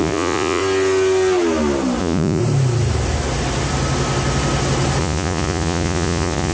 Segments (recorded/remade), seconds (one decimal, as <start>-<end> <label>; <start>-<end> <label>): 0.0-0.6 remade; 0.6-2.0 recorded; 2.0-2.4 remade; 2.4-5.0 recorded; 5.0-6.5 remade